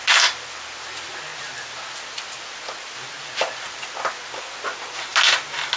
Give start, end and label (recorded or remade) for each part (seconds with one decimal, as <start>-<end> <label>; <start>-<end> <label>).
0.0-5.8 recorded